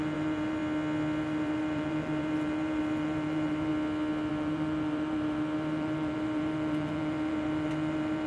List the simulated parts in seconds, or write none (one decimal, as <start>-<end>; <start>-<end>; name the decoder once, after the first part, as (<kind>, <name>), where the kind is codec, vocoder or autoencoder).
0.0-0.6 (vocoder, BigVGAN v2); 1.2-3.7; 4.3-8.3